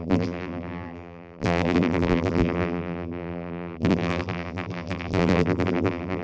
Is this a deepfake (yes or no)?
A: yes